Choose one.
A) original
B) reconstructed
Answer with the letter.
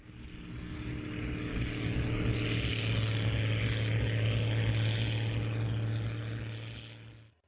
A